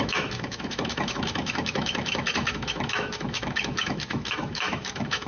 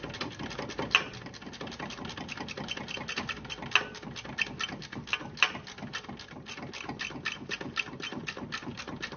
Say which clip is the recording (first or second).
second